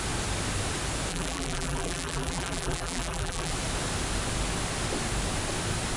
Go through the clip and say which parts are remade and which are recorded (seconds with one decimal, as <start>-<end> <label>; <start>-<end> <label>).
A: 0.0-1.1 recorded; 1.1-3.5 remade; 3.5-6.0 recorded